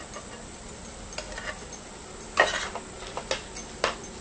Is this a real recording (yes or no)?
yes